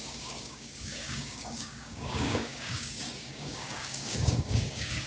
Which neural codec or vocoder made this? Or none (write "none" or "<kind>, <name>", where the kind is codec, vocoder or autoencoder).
codec, DAC